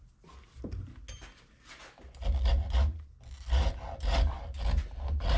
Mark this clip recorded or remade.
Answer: recorded